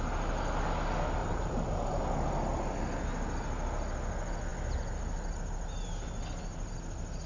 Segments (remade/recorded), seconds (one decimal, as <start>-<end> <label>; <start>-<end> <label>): 0.0-1.2 recorded; 1.2-2.0 remade; 2.0-7.3 recorded